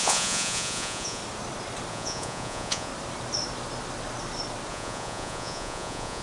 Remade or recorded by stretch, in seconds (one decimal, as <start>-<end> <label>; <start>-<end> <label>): 0.0-1.2 remade; 1.2-1.9 recorded; 1.9-2.9 remade; 2.9-4.7 recorded; 4.7-6.2 remade